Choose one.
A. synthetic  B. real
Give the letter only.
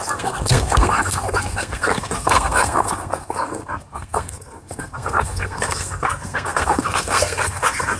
A